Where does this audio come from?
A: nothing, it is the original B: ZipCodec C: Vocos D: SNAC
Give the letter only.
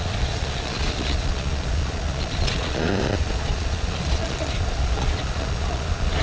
C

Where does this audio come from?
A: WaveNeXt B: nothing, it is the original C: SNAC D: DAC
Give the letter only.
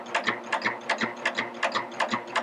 B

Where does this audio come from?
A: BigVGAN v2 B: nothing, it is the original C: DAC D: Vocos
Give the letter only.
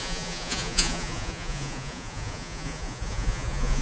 D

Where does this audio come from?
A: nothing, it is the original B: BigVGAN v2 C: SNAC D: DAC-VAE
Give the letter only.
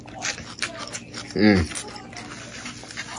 A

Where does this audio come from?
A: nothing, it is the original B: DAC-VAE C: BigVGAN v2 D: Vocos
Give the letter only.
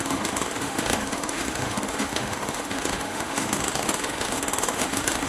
B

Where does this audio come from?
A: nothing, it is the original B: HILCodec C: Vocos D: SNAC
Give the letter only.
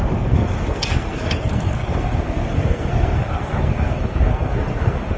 D